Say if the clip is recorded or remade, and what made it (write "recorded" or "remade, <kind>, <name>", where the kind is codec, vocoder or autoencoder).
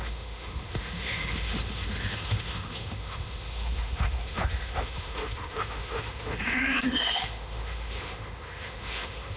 remade, autoencoder, DAC-VAE